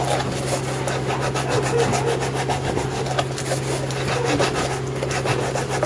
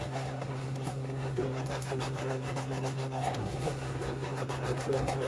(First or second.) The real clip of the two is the first